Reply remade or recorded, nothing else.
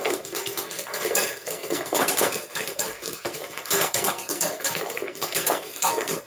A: remade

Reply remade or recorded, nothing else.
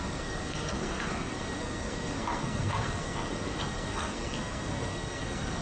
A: remade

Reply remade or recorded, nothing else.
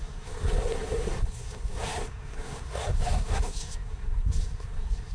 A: remade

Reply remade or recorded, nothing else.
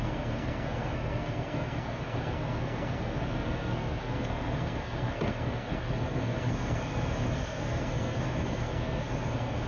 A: remade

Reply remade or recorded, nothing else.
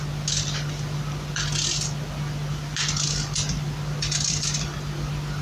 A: recorded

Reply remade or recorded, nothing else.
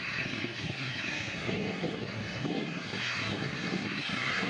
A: remade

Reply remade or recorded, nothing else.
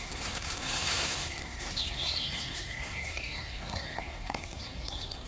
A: remade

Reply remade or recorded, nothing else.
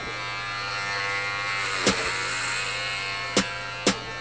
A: recorded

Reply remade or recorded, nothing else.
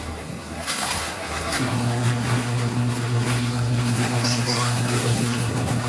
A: remade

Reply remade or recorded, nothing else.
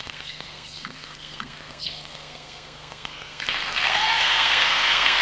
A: remade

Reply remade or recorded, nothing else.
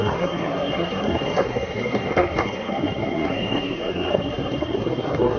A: remade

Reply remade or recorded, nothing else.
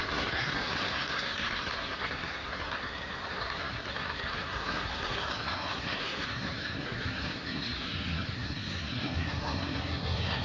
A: remade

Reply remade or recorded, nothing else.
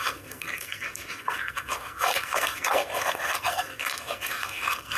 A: remade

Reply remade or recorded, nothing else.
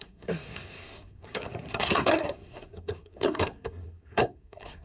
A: remade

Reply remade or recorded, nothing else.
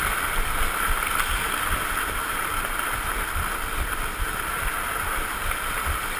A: recorded